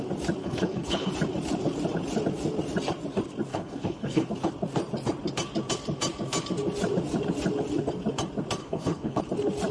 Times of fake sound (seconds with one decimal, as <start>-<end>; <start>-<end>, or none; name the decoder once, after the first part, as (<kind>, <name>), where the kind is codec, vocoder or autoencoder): 0.4-1.1 (codec, HILCodec); 3.5-4.3; 8.6-9.2